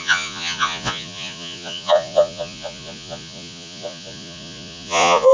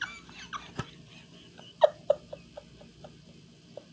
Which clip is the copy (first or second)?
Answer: first